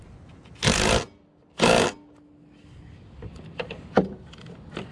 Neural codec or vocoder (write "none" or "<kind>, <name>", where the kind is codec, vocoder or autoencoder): none